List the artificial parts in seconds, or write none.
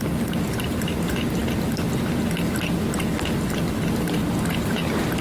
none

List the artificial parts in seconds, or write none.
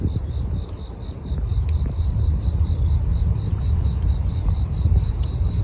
3.5-5.6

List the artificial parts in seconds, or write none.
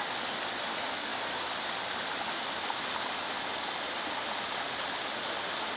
none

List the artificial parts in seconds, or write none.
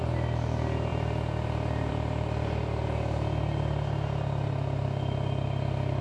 none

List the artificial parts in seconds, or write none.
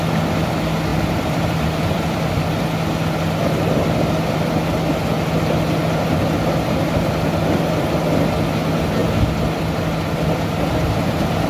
0.9-2.3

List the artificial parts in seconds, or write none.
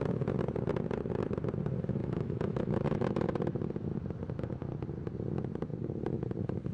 2.0-3.3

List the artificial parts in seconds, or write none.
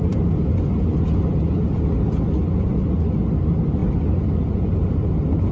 none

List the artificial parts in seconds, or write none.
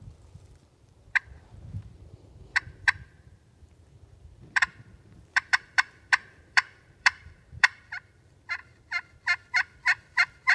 0.0-8.6; 9.5-10.5